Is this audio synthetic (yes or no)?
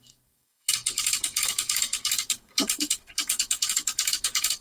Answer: yes